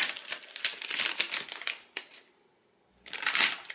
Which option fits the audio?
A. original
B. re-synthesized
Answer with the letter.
A